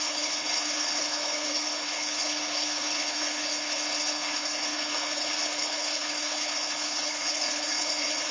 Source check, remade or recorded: remade